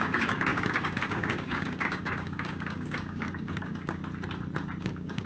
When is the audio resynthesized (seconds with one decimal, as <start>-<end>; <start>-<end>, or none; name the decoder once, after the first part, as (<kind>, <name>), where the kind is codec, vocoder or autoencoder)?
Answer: 0.0-4.0 (codec, DAC); 4.8-5.3